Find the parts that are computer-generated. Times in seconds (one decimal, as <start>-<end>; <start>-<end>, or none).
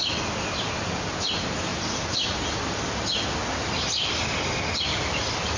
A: none